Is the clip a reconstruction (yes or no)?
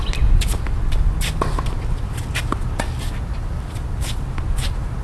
no